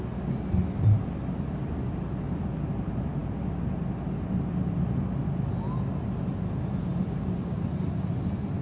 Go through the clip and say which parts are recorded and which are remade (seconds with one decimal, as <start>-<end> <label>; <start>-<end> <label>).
0.0-8.6 recorded